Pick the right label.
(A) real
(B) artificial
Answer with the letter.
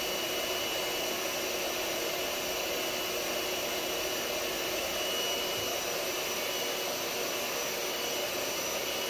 A